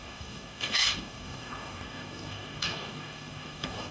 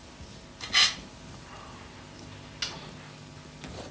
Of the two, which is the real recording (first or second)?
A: second